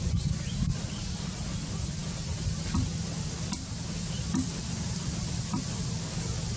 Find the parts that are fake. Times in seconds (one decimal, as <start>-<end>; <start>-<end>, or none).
none